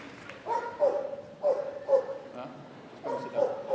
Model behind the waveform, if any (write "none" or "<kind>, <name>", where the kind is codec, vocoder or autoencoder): none